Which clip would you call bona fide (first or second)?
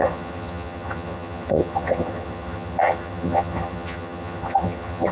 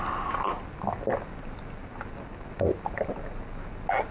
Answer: second